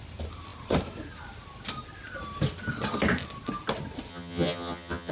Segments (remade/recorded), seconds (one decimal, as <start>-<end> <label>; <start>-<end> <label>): 0.0-4.1 recorded; 4.1-5.1 remade